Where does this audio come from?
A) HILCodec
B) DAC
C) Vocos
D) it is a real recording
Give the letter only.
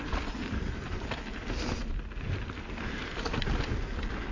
D